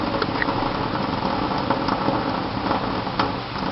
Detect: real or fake real